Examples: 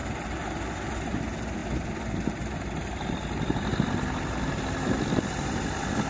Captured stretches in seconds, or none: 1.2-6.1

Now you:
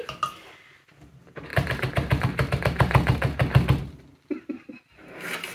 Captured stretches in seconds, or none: 0.0-1.5; 4.8-5.5

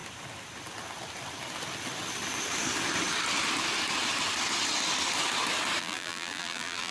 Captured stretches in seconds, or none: 0.0-5.8

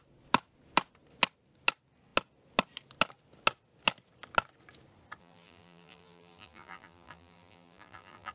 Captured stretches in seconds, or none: 0.0-5.2

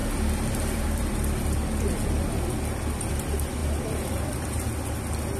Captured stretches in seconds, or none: 3.1-3.6; 4.3-5.4

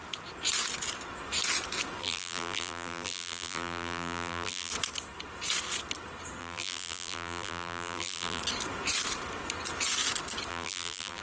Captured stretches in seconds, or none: 0.0-2.0; 4.7-6.4; 8.4-10.5

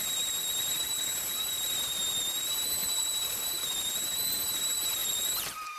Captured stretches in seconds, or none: 0.0-5.0